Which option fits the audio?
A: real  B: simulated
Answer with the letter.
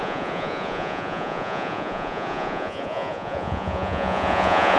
B